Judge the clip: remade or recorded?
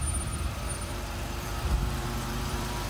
remade